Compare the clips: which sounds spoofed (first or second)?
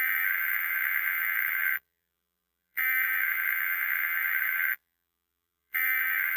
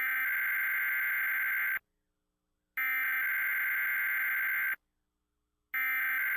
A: first